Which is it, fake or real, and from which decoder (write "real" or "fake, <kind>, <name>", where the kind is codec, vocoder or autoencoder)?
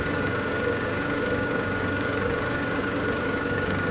fake, codec, DAC